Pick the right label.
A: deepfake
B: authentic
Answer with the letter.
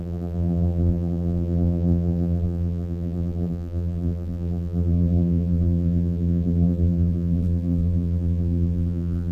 A